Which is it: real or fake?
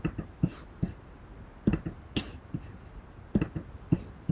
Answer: real